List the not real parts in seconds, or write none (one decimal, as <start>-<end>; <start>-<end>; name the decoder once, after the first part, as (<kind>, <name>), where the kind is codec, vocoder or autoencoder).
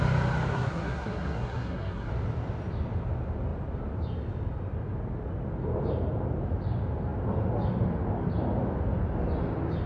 0.5-2.1 (codec, SNAC)